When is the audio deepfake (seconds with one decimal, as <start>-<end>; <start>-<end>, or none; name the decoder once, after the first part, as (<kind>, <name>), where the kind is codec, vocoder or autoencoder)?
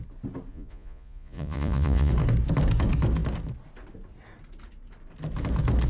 0.5-2.1 (vocoder, Vocos)